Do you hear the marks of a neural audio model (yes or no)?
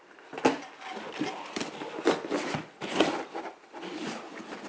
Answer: no